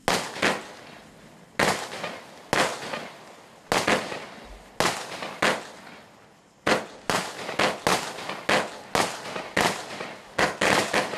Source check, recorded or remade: recorded